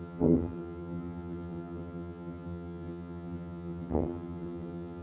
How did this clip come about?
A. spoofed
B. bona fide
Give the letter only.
A